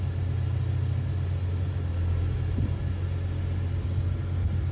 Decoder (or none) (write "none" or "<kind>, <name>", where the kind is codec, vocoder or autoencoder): none